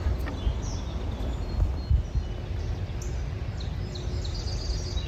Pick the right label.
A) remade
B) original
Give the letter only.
B